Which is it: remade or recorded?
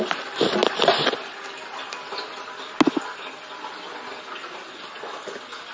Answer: recorded